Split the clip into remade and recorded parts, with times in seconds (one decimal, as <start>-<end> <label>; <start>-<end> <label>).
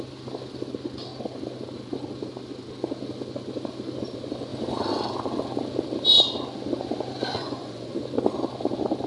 0.0-7.3 recorded; 7.3-8.0 remade; 8.0-9.1 recorded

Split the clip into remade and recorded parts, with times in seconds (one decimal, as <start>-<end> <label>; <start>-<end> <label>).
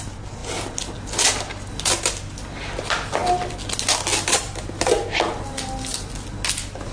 0.0-6.9 recorded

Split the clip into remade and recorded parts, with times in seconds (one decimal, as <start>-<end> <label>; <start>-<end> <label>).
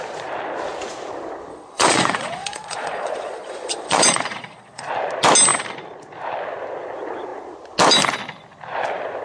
0.0-1.5 recorded; 1.5-4.9 remade; 4.9-9.2 recorded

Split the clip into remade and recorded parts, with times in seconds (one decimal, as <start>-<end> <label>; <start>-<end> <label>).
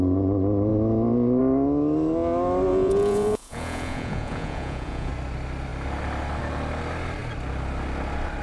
0.0-2.7 recorded; 2.7-5.1 remade; 5.1-8.4 recorded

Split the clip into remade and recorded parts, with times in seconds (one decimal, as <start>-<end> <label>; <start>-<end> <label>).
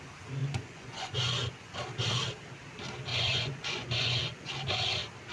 0.0-0.4 recorded; 0.4-1.8 remade; 1.8-3.1 recorded; 3.1-4.5 remade; 4.5-5.3 recorded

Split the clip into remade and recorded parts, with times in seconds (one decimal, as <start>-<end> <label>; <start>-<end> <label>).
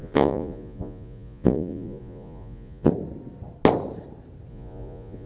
0.0-2.9 remade; 2.9-4.5 recorded; 4.5-5.3 remade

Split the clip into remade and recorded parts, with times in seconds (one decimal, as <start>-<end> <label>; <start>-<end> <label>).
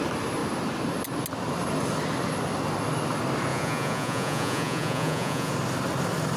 0.0-3.5 recorded; 3.5-5.5 remade; 5.5-6.4 recorded